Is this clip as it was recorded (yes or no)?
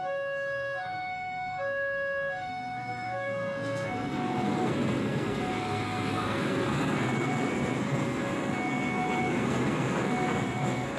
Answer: no